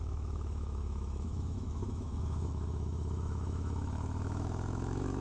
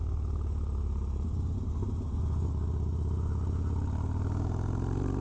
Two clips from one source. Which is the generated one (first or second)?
first